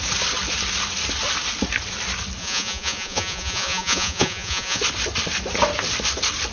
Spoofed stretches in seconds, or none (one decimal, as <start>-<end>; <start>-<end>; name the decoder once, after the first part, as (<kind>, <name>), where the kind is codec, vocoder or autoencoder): 2.4-4.8 (vocoder, Vocos)